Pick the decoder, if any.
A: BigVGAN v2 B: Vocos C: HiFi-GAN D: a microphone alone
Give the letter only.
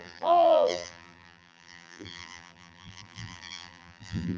A